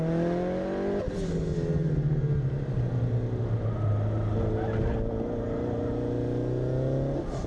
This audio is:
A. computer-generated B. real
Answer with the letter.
B